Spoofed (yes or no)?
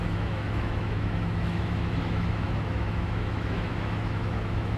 yes